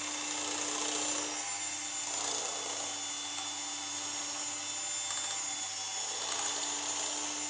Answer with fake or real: real